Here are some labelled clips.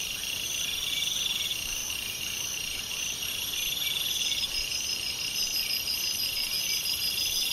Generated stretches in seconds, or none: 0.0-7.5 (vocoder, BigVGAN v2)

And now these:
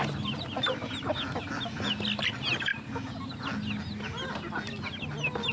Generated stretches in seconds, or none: 0.0-0.9 (vocoder, BigVGAN v2)

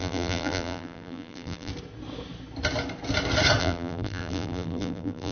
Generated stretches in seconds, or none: 0.0-1.7 (vocoder, BigVGAN v2); 3.6-5.3